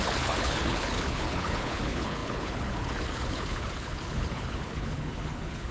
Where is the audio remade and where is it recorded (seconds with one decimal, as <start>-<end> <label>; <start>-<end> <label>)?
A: 0.0-5.7 remade